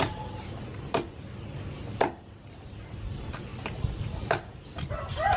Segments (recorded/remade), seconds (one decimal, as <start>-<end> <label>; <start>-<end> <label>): 0.0-5.4 recorded